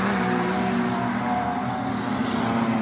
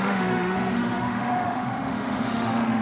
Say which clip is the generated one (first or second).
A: second